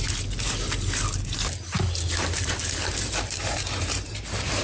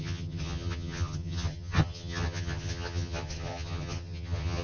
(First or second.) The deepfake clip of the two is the second